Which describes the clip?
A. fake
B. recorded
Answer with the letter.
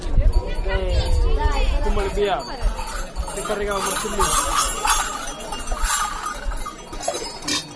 B